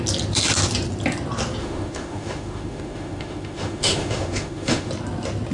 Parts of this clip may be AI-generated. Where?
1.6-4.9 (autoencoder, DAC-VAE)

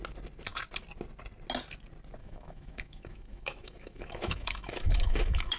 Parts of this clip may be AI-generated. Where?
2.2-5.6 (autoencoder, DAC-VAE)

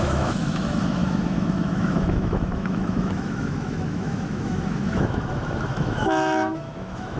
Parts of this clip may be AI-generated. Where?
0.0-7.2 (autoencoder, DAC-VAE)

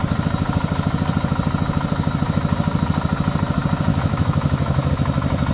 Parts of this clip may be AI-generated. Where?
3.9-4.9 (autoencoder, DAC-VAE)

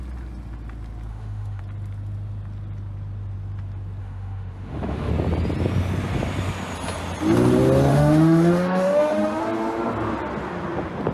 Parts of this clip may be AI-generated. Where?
1.1-1.6 (autoencoder, DAC-VAE); 4.0-5.1; 7.9-9.4

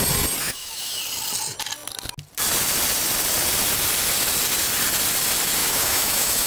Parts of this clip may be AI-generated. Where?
0.4-1.0 (autoencoder, DAC-VAE); 5.6-6.5

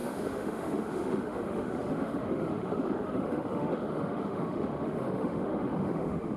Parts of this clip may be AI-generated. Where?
0.0-6.4 (autoencoder, DAC-VAE)